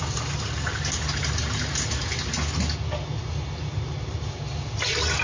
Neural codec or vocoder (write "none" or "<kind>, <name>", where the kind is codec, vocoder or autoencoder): none